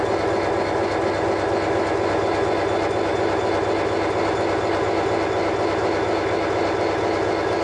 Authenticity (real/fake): real